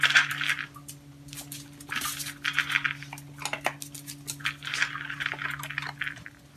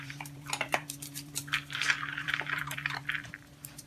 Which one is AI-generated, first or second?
second